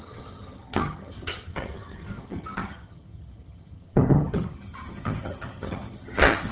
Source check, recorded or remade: remade